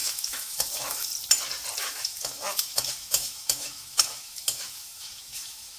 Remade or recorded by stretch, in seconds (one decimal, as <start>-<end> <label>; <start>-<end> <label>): 0.0-1.1 remade; 1.1-1.8 recorded; 1.8-5.8 remade